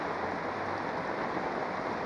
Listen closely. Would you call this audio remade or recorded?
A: recorded